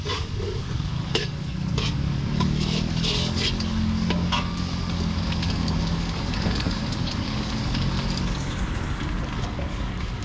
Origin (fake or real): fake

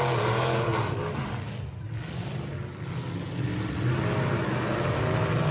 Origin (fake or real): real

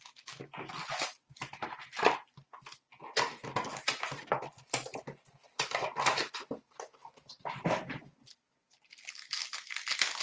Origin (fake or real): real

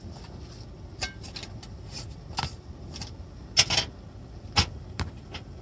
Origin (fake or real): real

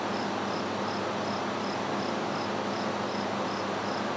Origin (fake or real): real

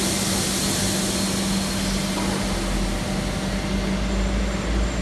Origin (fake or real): real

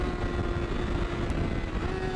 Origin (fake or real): real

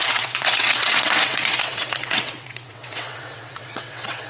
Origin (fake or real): fake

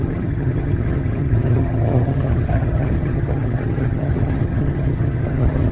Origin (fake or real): fake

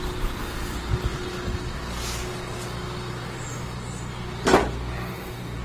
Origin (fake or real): real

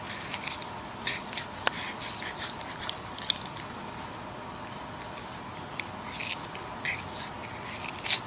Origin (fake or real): real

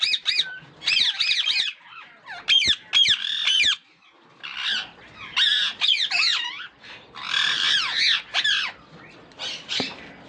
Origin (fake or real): real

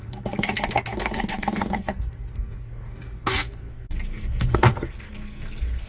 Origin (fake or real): fake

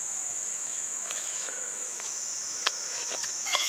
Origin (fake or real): fake